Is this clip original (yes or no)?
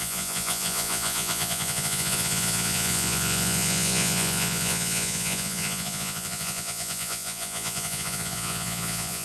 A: no